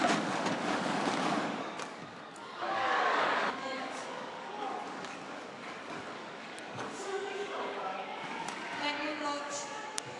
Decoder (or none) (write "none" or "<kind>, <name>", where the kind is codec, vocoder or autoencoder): codec, DAC